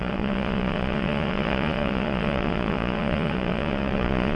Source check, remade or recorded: remade